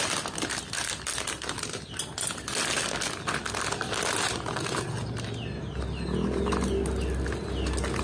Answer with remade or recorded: recorded